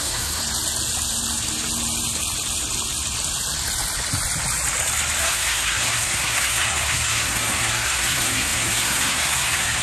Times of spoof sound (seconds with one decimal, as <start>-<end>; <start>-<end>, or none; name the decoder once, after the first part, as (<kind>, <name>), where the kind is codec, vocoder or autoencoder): 0.0-0.4 (codec, SNAC); 5.2-9.8